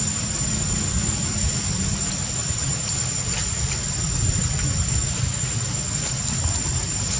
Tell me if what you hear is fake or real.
real